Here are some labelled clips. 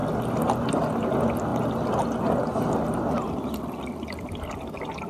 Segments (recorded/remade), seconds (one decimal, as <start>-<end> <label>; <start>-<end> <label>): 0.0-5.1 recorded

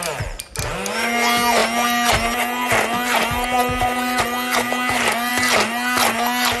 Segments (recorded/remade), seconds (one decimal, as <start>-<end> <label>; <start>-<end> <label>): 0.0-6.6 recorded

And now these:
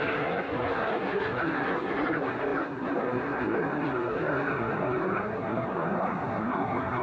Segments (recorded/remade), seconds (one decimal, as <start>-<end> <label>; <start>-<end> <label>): 0.0-7.0 remade

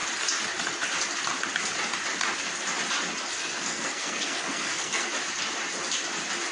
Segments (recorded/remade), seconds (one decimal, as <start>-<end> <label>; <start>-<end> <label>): 0.0-3.4 recorded; 3.4-5.1 remade; 5.1-6.5 recorded

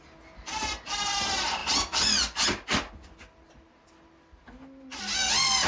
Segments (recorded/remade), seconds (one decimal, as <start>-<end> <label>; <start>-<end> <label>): 0.0-5.7 recorded

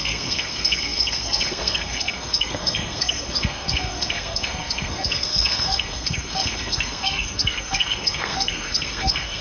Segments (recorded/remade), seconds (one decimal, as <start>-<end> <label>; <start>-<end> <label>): 0.0-9.4 remade